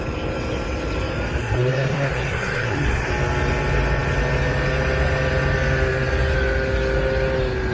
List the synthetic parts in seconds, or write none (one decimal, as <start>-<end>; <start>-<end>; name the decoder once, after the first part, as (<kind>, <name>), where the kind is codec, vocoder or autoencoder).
1.4-3.1 (codec, SNAC)